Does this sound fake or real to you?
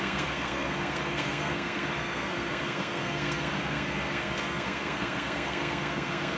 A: fake